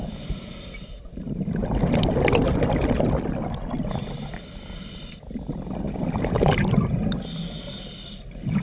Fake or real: real